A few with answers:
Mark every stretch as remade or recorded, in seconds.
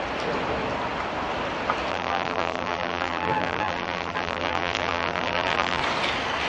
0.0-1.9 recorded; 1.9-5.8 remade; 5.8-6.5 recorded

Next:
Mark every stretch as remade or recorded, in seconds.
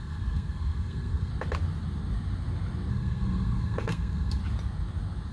0.0-1.3 remade; 1.3-2.9 recorded; 2.9-4.4 remade; 4.4-5.3 recorded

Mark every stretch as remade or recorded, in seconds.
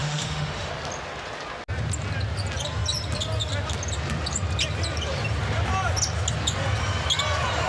0.0-0.7 remade; 0.7-7.7 recorded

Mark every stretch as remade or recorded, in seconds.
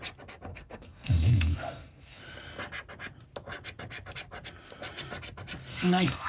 0.0-0.5 recorded; 0.5-2.2 remade; 2.2-5.7 recorded; 5.7-6.3 remade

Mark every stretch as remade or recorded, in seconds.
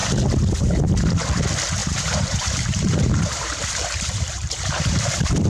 0.0-1.8 recorded; 1.8-5.1 remade; 5.1-5.5 recorded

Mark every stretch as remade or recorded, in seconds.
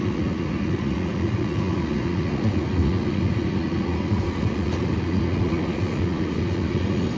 0.0-7.2 remade